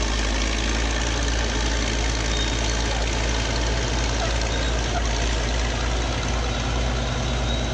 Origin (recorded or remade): recorded